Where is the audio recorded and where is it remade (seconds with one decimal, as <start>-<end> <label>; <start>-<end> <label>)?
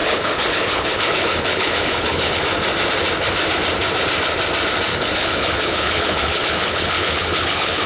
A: 0.0-2.4 remade; 2.4-4.9 recorded; 4.9-7.9 remade